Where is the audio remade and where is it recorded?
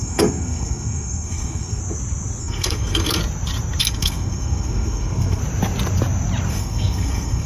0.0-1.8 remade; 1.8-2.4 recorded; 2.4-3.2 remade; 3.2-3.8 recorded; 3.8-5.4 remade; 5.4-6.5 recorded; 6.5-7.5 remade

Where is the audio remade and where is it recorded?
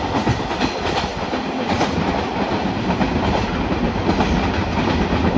0.0-5.4 recorded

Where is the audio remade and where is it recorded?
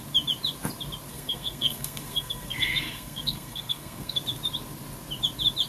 0.0-1.1 recorded; 1.1-4.2 remade; 4.2-5.7 recorded